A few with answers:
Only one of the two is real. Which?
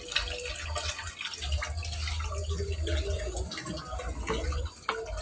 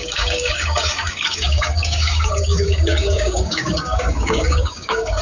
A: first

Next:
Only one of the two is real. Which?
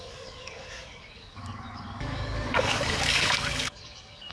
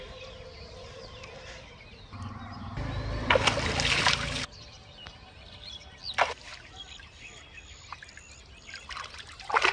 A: second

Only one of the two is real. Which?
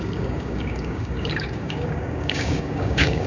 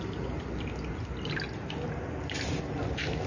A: second